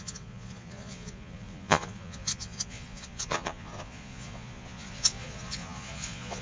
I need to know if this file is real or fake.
fake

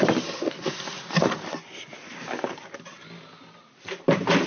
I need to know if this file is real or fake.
real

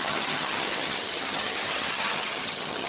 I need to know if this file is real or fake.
fake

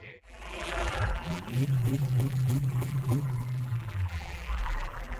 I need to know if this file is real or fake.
fake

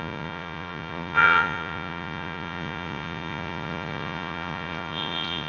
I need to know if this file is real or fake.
fake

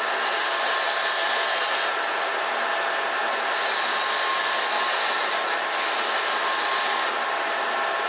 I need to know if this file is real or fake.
real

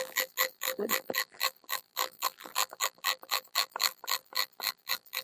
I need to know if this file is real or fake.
fake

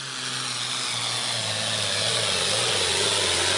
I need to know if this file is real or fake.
real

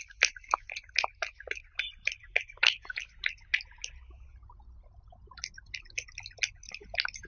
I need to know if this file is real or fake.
real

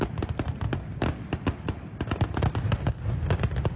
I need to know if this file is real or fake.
real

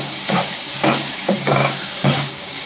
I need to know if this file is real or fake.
fake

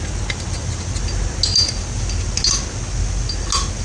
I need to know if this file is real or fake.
real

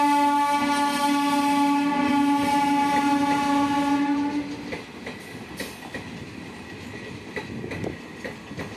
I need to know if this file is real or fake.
real